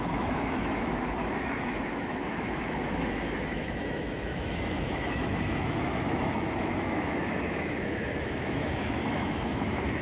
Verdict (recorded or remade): remade